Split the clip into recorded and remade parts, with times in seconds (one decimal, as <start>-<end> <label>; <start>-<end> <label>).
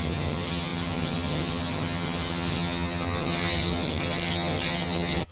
0.0-5.3 remade